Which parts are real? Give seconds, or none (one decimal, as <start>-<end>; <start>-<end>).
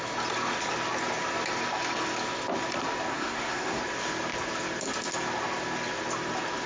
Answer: 0.0-3.1; 3.8-6.7